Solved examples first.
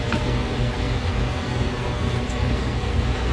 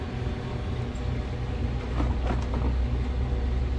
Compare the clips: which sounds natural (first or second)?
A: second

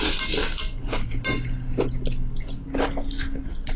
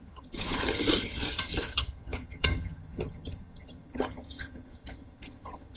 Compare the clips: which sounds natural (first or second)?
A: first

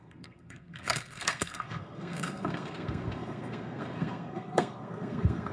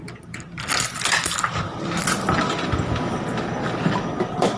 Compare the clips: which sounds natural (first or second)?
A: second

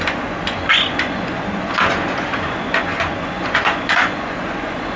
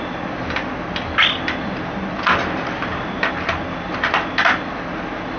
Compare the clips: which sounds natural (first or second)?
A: second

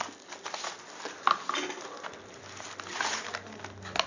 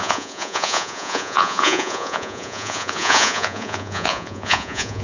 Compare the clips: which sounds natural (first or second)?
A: first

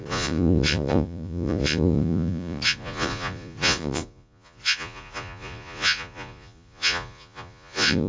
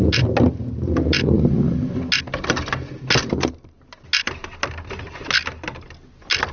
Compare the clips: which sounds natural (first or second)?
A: second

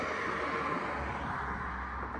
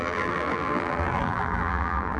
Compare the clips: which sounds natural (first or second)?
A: first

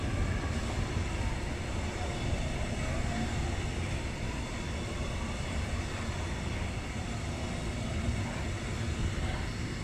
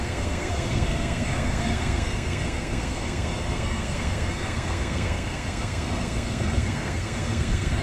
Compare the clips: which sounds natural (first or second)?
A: first